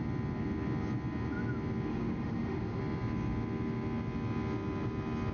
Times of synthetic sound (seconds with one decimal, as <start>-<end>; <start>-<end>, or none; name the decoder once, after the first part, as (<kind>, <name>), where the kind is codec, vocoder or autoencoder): 1.9-2.8 (autoencoder, DAC-VAE)